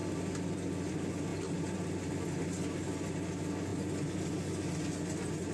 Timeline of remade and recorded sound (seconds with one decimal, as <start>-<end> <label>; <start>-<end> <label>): 0.0-5.5 recorded